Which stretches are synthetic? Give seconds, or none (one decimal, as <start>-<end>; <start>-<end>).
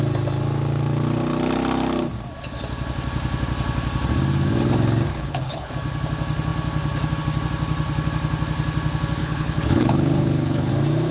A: 5.1-5.7; 9.2-10.7